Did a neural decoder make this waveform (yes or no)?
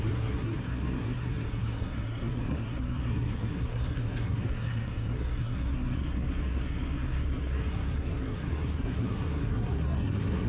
yes